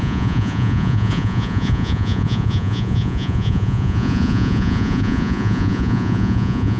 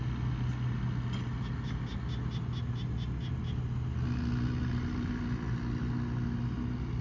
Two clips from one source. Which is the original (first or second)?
second